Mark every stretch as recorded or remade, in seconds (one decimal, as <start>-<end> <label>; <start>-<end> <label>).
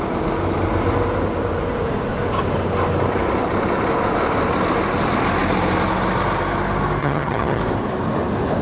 0.0-7.0 recorded; 7.0-7.6 remade; 7.6-8.6 recorded